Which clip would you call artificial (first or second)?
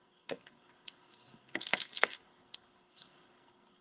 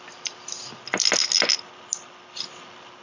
first